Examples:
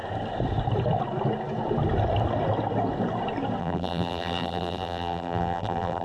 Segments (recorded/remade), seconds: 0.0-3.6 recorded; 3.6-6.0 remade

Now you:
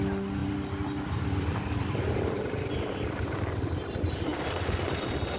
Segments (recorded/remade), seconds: 0.0-0.4 recorded; 0.4-3.6 remade; 3.6-4.3 recorded; 4.3-4.8 remade; 4.8-5.4 recorded

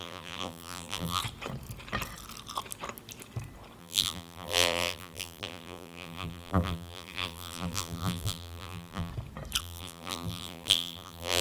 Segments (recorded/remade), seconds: 0.0-1.2 remade; 1.2-3.8 recorded; 3.8-9.1 remade; 9.1-9.6 recorded; 9.6-11.4 remade

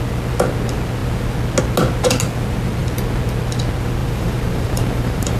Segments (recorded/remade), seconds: 0.0-4.0 recorded; 4.0-5.4 remade